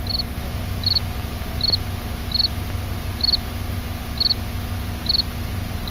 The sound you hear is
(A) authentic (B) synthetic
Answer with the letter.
A